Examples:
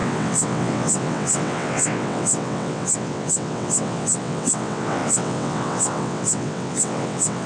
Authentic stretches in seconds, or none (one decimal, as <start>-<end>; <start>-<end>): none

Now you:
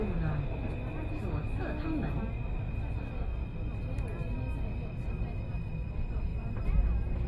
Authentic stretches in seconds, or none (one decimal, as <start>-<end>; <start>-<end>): 0.0-7.3

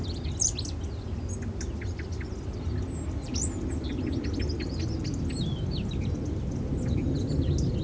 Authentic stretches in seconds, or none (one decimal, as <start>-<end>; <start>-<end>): 0.0-7.8

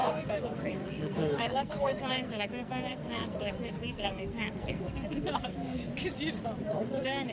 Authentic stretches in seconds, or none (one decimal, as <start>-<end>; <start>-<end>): 5.9-6.7

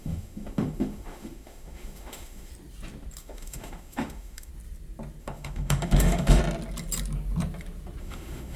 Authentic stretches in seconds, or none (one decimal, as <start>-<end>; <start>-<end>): 2.5-3.2; 4.5-5.2; 6.4-8.0

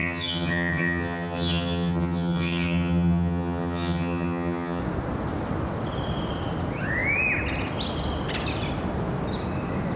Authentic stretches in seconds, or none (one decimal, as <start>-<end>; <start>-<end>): 4.8-10.0

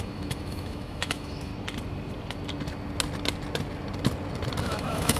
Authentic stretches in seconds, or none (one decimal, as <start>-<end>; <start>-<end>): 1.5-4.6